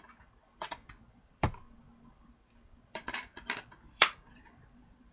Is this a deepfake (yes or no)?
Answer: yes